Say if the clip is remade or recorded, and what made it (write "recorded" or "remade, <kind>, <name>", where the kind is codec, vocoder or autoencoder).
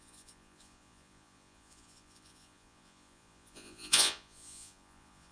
remade, vocoder, Vocos